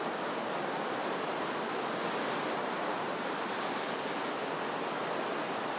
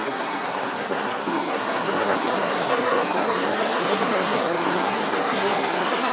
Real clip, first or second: first